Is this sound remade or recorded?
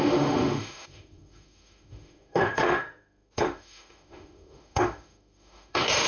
remade